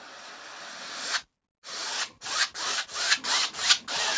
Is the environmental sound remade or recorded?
recorded